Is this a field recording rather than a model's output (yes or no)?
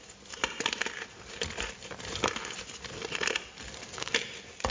yes